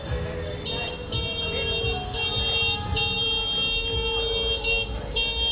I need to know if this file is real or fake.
real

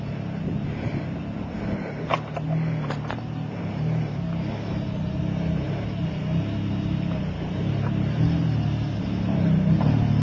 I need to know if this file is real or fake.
real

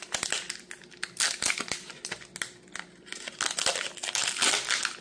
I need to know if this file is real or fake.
real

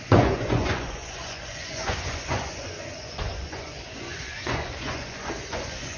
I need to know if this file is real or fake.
fake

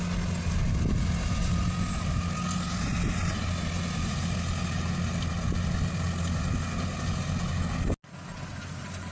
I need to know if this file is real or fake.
real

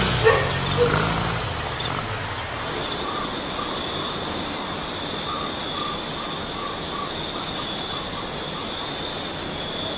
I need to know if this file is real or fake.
real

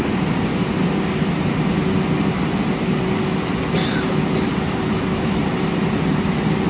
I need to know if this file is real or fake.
real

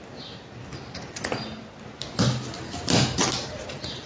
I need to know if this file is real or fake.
real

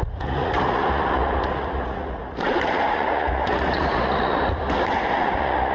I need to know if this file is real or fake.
fake